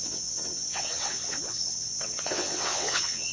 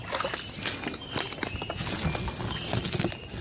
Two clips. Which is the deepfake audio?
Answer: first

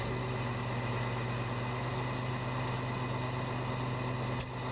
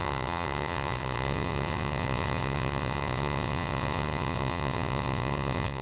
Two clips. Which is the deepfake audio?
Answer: second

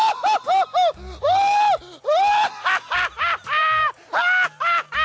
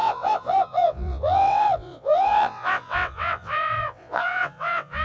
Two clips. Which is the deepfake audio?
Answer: second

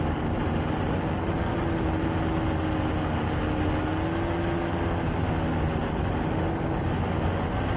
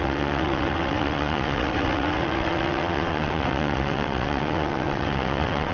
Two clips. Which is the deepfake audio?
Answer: second